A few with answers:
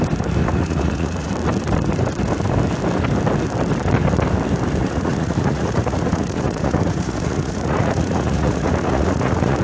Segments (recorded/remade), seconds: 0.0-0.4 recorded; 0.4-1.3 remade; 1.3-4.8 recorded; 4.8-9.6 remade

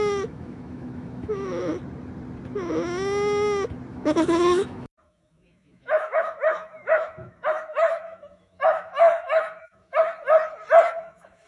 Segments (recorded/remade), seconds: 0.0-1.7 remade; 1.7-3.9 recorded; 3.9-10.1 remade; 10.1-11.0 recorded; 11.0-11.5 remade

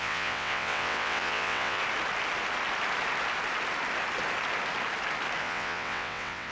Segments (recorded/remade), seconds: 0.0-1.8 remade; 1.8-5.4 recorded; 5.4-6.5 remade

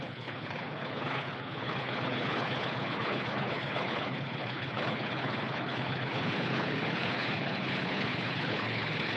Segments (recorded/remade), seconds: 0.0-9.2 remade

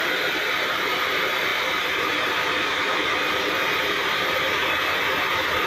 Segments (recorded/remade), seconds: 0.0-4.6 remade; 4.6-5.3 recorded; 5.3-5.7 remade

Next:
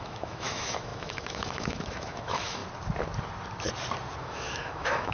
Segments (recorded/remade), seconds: 0.0-2.6 remade; 2.6-4.2 recorded; 4.2-5.1 remade

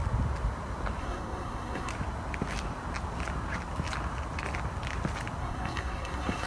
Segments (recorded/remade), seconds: 0.0-1.0 recorded; 1.0-1.9 remade; 1.9-5.4 recorded; 5.4-6.5 remade

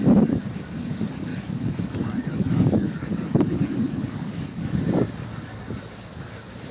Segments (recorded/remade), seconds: 0.0-1.3 recorded; 1.3-4.8 remade; 4.8-6.7 recorded